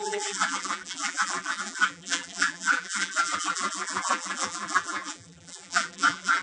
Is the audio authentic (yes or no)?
no